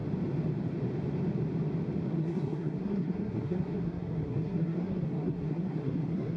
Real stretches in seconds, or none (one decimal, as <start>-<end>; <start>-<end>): 0.0-2.1